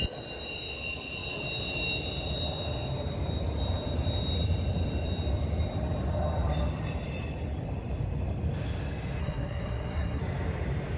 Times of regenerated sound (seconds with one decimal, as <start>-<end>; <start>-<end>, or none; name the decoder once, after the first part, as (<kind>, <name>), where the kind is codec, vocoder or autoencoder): 9.2-10.2 (codec, SNAC)